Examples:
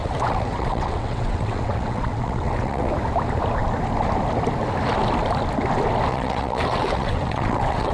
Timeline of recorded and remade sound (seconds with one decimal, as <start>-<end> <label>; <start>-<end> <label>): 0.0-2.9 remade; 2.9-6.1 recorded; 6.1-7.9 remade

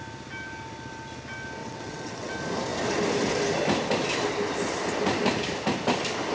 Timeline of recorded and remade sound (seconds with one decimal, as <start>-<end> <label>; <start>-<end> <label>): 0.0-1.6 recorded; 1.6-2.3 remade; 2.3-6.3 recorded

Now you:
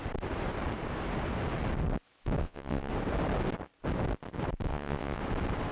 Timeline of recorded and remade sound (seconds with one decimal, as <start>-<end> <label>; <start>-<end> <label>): 0.0-2.4 recorded; 2.4-2.9 remade; 2.9-4.7 recorded; 4.7-5.2 remade; 5.2-5.7 recorded